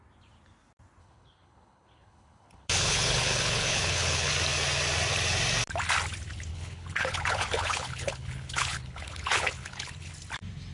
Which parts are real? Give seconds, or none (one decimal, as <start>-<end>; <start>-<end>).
0.0-1.0; 4.3-6.5; 10.1-10.7